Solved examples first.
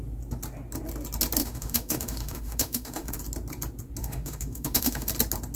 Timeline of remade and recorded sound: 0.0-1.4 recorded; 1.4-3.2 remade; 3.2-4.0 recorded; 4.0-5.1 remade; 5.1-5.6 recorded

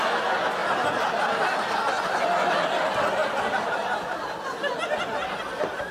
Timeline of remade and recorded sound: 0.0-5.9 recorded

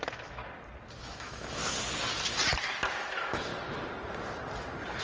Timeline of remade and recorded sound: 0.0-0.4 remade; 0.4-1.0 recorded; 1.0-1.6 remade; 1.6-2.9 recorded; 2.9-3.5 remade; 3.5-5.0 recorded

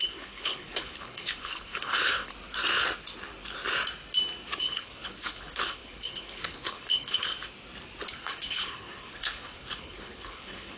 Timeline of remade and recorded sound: 0.0-2.3 remade; 2.3-4.6 recorded; 4.6-7.3 remade; 7.3-8.1 recorded; 8.1-10.8 remade

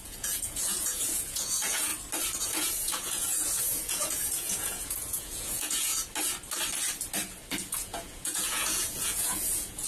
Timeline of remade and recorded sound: 0.0-1.9 remade; 1.9-2.4 recorded; 2.4-5.9 remade; 5.9-7.7 recorded; 7.7-9.9 remade